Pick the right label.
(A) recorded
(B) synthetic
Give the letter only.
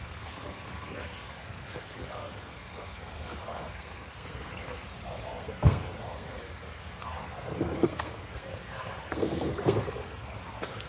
B